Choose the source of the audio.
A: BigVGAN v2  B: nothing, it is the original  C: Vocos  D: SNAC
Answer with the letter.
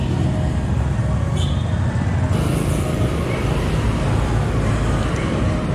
B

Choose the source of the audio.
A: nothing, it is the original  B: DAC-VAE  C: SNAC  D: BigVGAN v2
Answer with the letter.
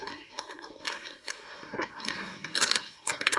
C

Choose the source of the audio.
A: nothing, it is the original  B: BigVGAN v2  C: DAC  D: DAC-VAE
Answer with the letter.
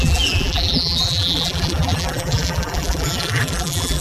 B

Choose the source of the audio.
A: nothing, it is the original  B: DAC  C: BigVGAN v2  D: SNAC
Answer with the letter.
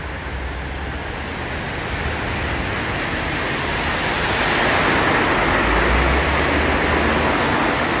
A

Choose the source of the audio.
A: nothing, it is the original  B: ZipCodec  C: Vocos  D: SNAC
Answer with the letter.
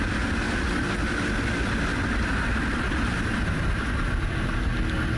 A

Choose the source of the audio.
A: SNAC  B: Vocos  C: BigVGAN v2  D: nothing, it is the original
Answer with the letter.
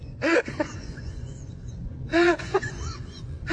B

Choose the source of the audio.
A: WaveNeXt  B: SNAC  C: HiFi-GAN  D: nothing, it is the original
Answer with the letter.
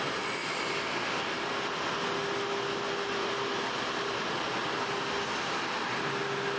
D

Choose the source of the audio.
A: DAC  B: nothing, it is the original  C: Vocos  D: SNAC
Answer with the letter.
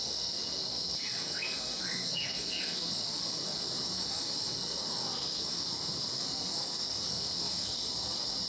D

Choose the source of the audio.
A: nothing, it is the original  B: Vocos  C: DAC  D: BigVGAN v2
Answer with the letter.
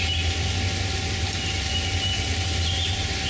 A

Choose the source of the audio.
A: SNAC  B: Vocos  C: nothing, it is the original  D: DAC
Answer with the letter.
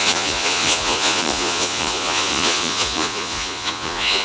B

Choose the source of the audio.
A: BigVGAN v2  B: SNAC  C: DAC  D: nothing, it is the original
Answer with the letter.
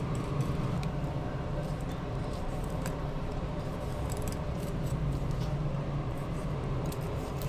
A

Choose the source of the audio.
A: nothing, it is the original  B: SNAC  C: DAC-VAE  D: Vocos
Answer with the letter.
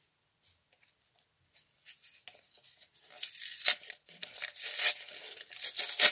A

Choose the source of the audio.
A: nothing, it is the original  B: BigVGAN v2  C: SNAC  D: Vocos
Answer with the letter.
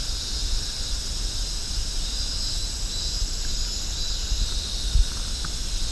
A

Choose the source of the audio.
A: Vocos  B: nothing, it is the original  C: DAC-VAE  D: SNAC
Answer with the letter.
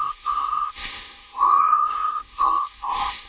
D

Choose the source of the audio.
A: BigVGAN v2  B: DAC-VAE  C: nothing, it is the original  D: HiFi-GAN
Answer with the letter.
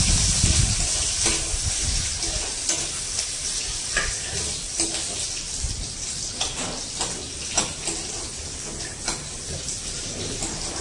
C